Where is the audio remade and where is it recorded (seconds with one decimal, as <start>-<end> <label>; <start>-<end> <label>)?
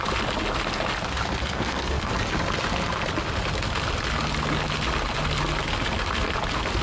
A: 0.0-1.4 recorded; 1.4-2.1 remade; 2.1-6.8 recorded